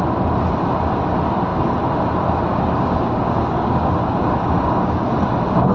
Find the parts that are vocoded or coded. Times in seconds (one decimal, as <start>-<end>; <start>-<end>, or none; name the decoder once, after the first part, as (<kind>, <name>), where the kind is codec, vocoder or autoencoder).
2.5-5.1 (codec, DAC)